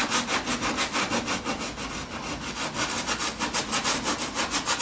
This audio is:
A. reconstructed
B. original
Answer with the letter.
B